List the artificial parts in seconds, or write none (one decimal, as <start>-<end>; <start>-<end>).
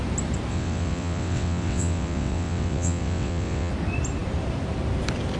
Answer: 0.5-3.7